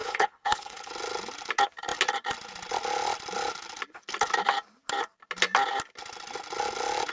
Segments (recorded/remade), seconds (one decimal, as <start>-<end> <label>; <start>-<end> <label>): 0.0-0.9 remade; 0.9-7.1 recorded